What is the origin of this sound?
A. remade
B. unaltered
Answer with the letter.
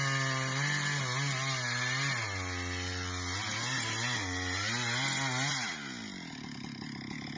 B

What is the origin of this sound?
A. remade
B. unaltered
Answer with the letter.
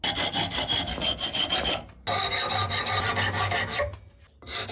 B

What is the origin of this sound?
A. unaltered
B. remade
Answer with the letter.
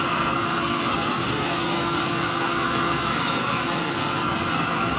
B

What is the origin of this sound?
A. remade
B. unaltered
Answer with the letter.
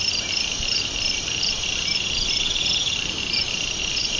A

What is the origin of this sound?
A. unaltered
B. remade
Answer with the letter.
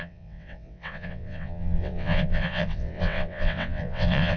B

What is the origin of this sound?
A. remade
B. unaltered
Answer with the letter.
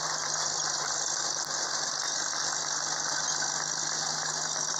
B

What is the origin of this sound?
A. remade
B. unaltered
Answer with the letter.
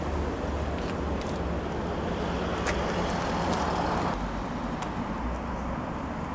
B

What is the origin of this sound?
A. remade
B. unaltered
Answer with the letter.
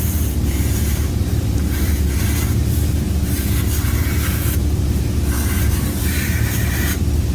A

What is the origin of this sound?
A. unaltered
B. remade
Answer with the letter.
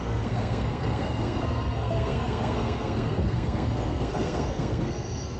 B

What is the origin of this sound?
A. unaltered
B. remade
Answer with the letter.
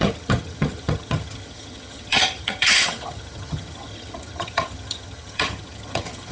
B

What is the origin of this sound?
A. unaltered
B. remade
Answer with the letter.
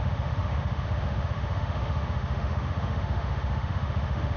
B